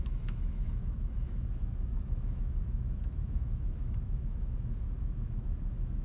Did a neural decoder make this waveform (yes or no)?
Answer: yes